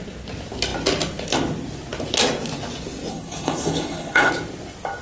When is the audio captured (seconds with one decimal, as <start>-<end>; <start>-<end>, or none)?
0.0-3.1; 4.3-5.0